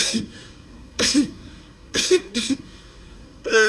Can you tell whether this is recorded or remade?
remade